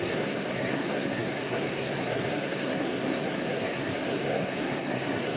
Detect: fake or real fake